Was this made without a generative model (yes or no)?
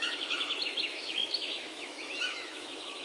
no